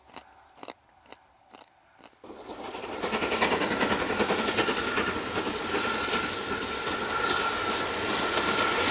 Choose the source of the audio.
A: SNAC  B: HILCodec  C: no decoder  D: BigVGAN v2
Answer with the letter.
C